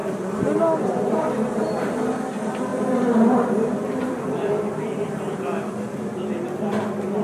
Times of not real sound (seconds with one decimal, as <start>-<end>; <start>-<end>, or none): 0.0-1.7; 2.7-5.7